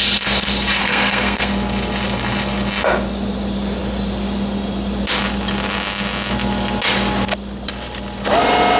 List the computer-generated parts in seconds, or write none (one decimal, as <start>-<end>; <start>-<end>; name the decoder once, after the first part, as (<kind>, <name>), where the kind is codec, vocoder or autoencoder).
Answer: 0.8-1.5 (codec, SNAC)

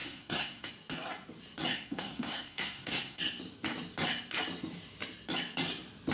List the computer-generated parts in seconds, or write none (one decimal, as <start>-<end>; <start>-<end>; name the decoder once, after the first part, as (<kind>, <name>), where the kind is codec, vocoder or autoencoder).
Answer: 0.0-0.7 (codec, SNAC); 1.7-3.2

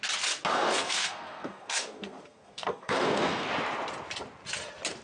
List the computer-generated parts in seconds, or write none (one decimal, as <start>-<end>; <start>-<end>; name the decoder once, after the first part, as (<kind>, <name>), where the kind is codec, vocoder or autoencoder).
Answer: 0.5-3.5 (codec, SNAC)

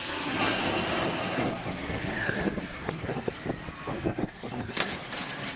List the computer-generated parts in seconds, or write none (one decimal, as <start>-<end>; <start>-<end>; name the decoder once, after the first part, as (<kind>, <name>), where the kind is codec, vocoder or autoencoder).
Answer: 0.0-0.6 (codec, SNAC); 1.2-3.3; 3.9-4.9

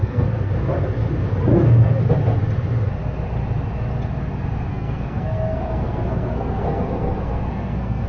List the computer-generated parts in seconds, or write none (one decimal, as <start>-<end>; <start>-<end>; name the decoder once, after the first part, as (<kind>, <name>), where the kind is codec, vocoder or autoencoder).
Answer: 0.0-0.5 (codec, SNAC); 1.5-2.0; 4.7-8.1

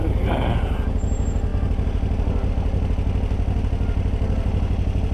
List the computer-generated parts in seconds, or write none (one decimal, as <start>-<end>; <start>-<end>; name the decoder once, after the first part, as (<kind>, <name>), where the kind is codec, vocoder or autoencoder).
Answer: none

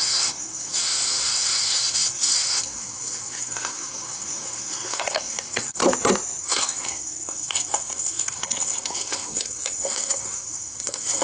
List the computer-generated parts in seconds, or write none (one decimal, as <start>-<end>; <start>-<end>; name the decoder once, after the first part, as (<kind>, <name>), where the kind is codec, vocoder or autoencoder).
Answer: 0.0-5.8 (codec, SNAC); 6.4-11.2

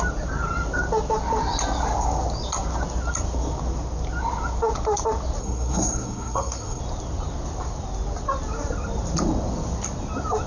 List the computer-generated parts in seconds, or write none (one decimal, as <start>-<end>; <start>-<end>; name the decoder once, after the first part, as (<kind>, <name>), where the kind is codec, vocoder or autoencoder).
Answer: 5.4-6.8 (codec, SNAC)